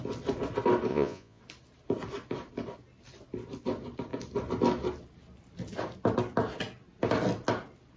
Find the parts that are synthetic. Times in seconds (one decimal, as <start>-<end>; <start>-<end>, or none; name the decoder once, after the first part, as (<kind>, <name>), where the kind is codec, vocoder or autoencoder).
0.9-1.4 (vocoder, Vocos)